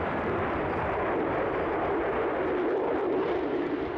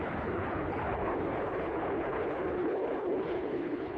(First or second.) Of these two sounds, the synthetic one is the second